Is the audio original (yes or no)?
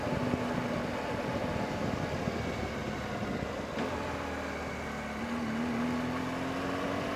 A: yes